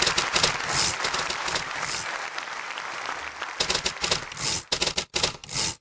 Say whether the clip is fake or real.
real